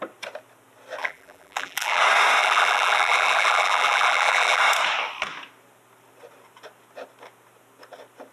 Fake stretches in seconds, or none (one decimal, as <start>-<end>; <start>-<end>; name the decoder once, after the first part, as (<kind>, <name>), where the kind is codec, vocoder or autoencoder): 1.0-2.0 (vocoder, BigVGAN v2); 2.4-4.6